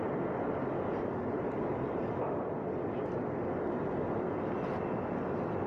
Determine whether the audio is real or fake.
real